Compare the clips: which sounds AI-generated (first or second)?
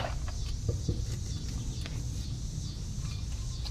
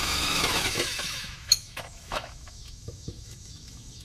second